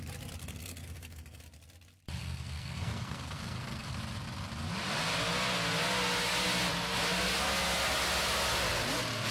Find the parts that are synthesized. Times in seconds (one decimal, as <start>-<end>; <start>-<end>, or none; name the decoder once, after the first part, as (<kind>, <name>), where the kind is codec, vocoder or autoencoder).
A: 0.4-1.4 (codec, SNAC); 2.2-4.0